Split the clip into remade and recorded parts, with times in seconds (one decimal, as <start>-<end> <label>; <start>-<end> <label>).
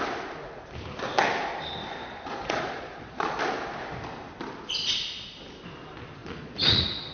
0.0-2.0 recorded; 2.0-3.4 remade; 3.4-6.2 recorded; 6.2-7.1 remade